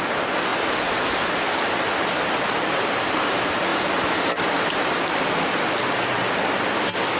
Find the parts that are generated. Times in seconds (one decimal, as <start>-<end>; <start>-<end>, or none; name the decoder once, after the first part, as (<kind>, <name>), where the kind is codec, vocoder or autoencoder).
none